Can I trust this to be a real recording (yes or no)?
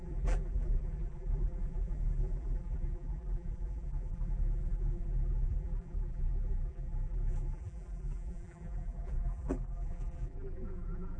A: no